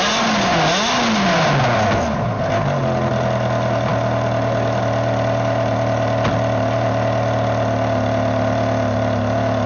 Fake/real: real